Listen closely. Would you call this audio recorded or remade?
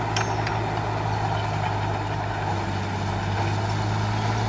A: recorded